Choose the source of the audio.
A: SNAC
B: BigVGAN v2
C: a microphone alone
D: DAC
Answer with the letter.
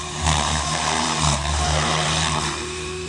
B